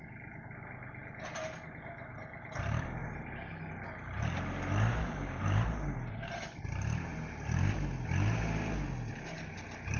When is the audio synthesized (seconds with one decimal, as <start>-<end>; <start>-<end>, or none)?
5.0-6.6